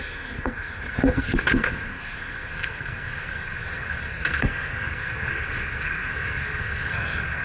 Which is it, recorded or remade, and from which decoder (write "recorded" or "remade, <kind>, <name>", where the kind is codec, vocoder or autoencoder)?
remade, codec, SNAC